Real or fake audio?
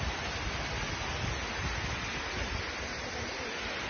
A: real